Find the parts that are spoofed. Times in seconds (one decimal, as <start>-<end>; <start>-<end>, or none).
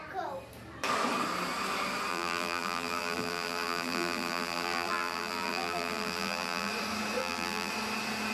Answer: 2.1-6.7; 7.2-7.7